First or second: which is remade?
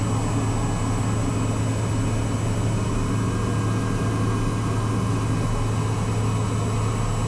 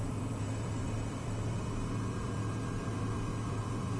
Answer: second